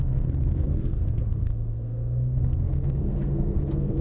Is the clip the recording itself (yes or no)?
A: no